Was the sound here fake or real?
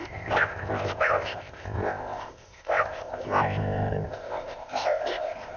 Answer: fake